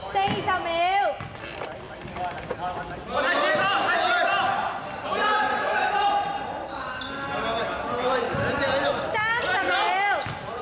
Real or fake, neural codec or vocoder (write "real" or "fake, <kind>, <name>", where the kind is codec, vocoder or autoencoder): real